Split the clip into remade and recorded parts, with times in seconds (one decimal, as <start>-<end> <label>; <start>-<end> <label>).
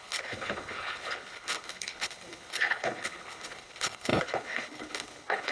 0.0-5.5 remade